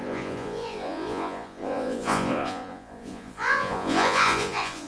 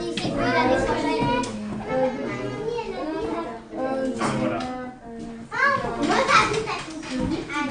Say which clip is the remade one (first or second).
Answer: first